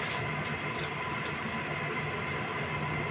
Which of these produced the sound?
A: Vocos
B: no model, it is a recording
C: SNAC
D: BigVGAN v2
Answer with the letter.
B